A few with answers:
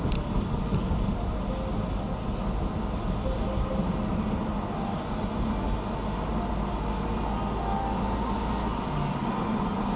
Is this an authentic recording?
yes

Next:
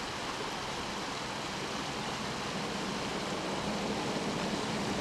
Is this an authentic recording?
yes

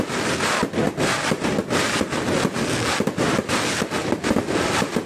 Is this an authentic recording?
yes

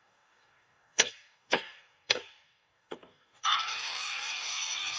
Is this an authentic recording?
no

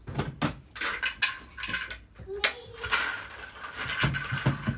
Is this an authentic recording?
yes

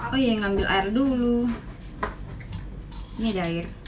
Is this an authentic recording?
yes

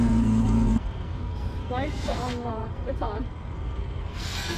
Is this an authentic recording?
no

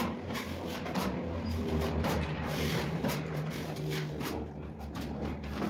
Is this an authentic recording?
no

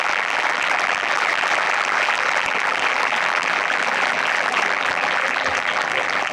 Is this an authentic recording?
no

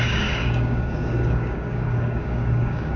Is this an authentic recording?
no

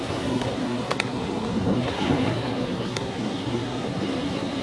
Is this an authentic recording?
no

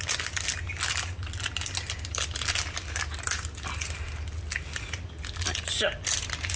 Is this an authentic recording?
yes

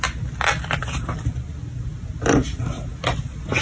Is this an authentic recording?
yes